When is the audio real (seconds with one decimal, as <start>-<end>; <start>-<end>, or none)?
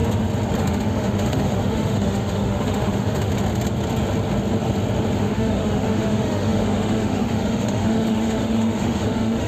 0.0-0.6; 3.3-5.2